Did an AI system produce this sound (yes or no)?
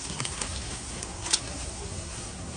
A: yes